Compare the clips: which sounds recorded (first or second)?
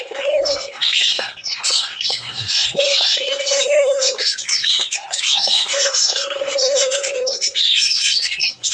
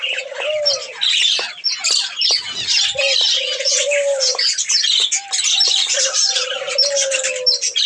second